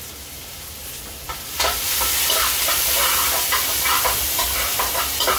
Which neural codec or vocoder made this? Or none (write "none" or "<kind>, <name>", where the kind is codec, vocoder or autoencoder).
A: none